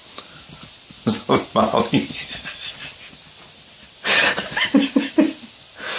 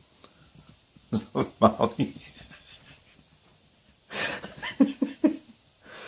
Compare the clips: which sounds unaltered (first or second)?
first